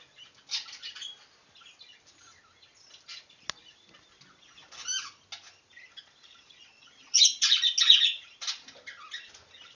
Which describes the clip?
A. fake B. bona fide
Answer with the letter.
B